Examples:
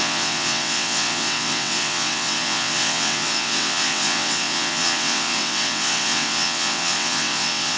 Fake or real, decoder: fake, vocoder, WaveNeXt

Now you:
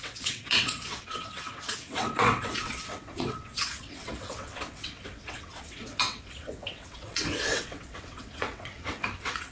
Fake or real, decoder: fake, vocoder, WaveNeXt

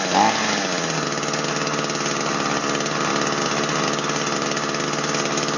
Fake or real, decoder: real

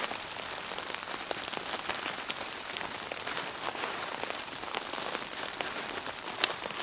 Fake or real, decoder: real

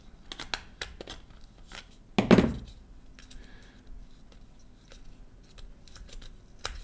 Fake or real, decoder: real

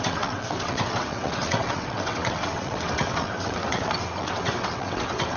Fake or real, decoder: fake, vocoder, WaveNeXt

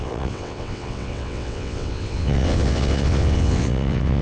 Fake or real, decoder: fake, vocoder, WaveNeXt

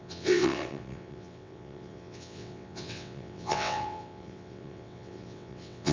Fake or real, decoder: fake, vocoder, WaveNeXt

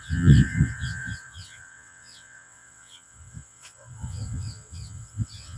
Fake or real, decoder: fake, vocoder, WaveNeXt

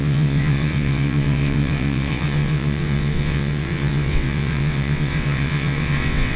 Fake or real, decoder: fake, vocoder, WaveNeXt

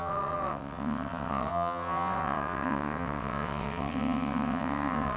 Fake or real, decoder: fake, vocoder, WaveNeXt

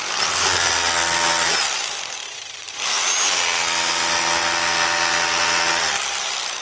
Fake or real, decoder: real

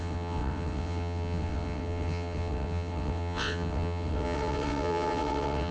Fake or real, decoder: fake, vocoder, WaveNeXt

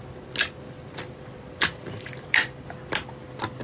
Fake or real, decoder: real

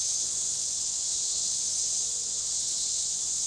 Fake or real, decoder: fake, vocoder, WaveNeXt